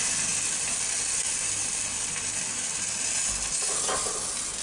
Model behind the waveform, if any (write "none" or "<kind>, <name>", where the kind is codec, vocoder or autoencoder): none